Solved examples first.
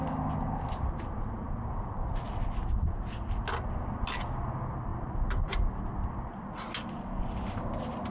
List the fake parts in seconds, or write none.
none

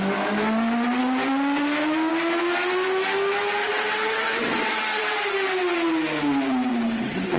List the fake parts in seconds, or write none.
3.6-5.5 (vocoder, WaveNeXt); 6.7-7.4

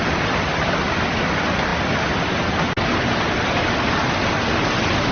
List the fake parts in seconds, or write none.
none

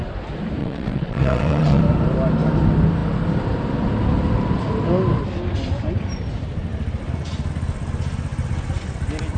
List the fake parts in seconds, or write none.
0.6-1.8 (vocoder, WaveNeXt)

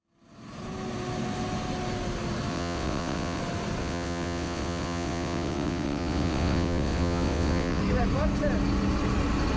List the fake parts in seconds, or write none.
2.5-3.4 (vocoder, WaveNeXt); 3.8-7.8